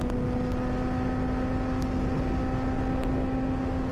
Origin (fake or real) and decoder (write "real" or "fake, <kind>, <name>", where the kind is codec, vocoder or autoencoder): real